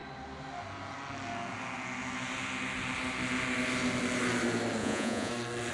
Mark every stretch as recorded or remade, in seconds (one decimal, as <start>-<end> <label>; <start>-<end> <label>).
0.0-4.8 recorded; 4.8-5.3 remade; 5.3-5.7 recorded